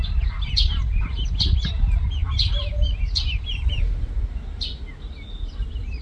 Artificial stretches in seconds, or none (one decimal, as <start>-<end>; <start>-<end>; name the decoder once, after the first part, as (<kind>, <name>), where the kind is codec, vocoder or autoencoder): none